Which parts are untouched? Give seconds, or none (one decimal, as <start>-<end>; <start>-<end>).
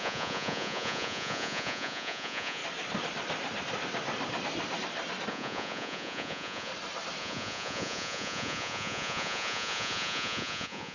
2.6-5.3; 6.7-7.2